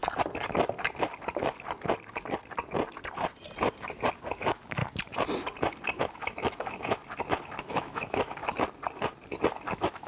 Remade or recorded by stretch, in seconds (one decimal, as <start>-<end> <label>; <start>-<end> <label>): 0.0-4.3 recorded; 4.3-4.8 remade; 4.8-6.0 recorded; 6.0-7.0 remade; 7.0-7.6 recorded; 7.6-8.4 remade; 8.4-9.7 recorded; 9.7-10.1 remade